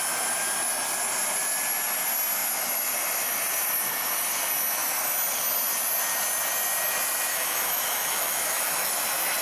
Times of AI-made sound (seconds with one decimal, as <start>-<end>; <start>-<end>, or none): 7.3-8.9